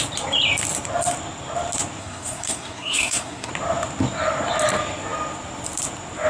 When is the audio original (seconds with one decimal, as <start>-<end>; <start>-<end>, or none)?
0.0-2.0; 3.5-6.3